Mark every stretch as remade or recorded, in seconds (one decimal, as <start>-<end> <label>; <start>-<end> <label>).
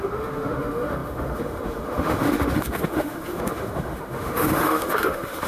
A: 0.0-5.5 remade